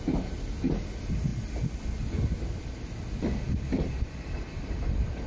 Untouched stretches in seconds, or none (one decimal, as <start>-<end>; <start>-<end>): 0.0-5.3